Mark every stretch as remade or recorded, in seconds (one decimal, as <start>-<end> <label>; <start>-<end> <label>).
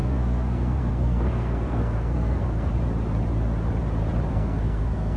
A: 0.0-2.7 remade; 2.7-4.3 recorded; 4.3-5.2 remade